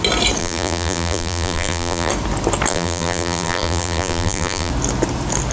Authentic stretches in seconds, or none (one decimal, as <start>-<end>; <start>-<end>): 0.0-0.4; 2.1-2.7; 4.7-5.5